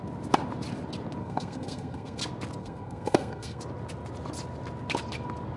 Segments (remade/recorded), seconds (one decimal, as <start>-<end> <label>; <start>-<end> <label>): 0.0-1.2 recorded; 1.2-2.2 remade; 2.2-2.6 recorded; 2.6-3.6 remade; 3.6-5.6 recorded